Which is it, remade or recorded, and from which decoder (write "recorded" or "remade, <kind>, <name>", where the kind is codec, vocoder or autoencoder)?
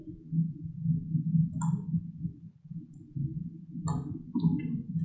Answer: recorded